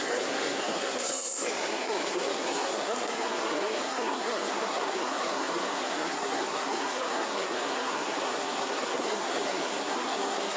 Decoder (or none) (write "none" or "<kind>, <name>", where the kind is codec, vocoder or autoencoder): codec, SNAC